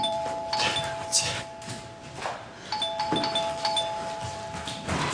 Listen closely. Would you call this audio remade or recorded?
recorded